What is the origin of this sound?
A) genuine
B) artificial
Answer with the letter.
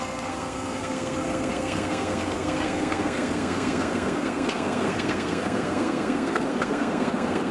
B